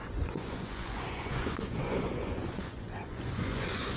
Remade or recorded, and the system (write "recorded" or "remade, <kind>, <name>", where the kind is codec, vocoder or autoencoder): remade, vocoder, Vocos